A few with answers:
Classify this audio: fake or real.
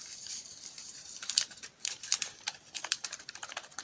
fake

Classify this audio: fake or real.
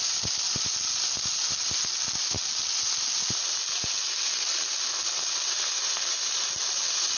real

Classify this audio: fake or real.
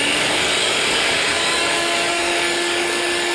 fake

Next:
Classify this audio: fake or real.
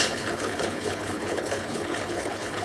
fake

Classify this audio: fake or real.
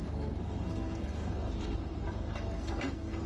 fake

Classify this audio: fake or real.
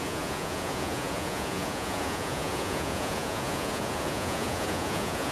fake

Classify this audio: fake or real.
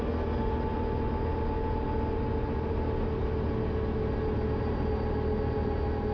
real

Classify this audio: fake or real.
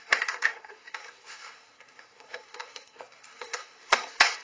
fake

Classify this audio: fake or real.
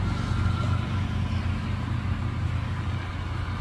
real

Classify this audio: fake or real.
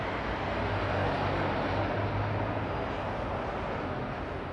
real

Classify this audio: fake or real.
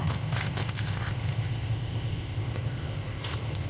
fake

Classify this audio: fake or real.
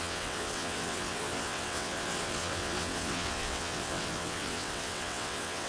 fake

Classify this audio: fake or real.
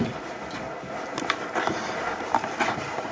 real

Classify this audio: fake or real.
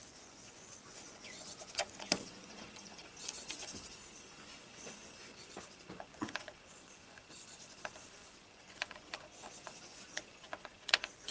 fake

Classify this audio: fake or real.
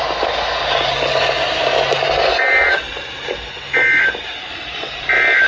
real